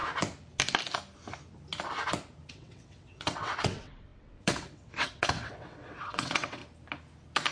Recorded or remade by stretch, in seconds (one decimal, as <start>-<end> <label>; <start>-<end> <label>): 0.0-2.5 recorded; 2.5-6.6 remade; 6.6-7.5 recorded